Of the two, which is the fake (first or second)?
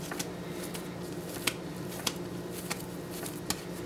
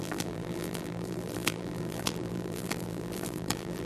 second